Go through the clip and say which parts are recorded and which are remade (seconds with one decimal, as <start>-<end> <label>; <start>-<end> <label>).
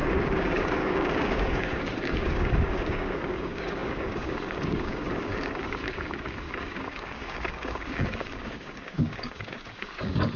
0.0-10.4 remade